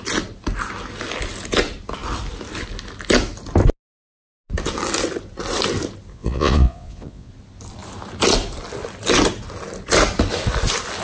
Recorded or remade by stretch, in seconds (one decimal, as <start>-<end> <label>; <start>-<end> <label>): 0.0-6.1 recorded; 6.1-7.3 remade; 7.3-11.0 recorded